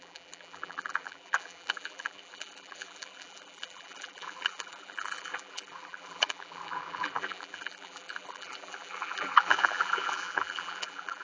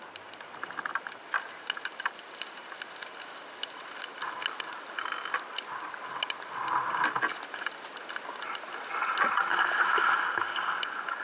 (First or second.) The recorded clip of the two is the second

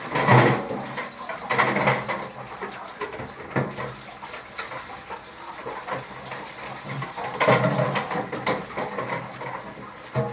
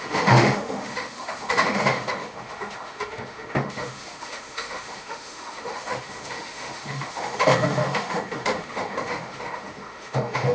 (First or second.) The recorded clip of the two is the first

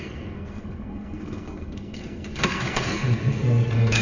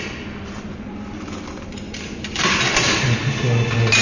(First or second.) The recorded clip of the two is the second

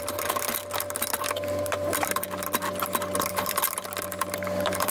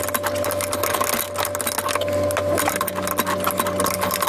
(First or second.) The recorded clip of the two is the second